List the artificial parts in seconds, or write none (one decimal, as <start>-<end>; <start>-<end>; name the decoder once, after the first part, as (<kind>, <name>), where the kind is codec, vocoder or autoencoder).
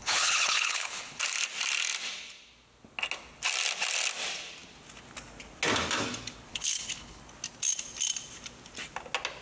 0.0-1.2 (codec, HILCodec); 6.5-7.2